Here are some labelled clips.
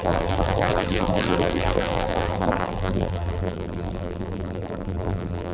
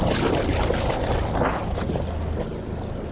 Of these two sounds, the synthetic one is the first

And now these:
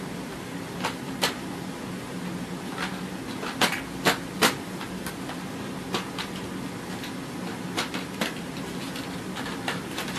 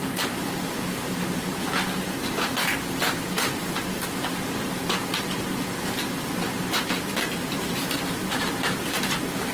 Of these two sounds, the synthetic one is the second